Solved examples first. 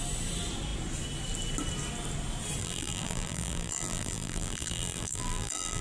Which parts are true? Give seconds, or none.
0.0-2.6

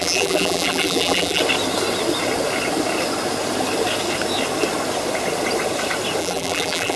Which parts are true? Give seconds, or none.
1.4-6.2

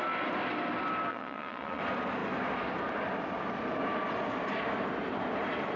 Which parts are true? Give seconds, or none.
0.0-1.1; 1.8-5.8

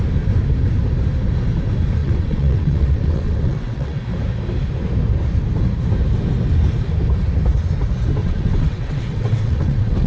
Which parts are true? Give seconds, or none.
0.0-2.0; 4.0-8.2

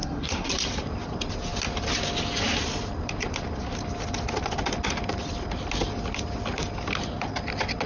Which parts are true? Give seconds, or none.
0.5-7.9

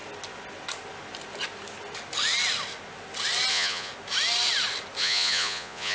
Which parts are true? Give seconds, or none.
0.0-3.5; 3.9-5.0

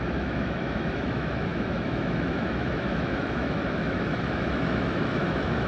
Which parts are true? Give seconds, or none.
none

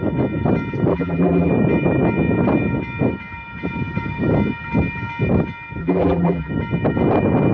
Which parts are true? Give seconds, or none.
0.0-0.9; 1.5-5.8; 6.5-7.5